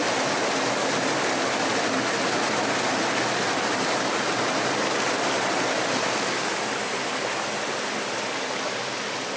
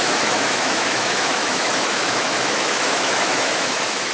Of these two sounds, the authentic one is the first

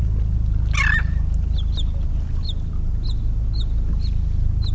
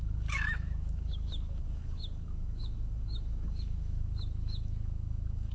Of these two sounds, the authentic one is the first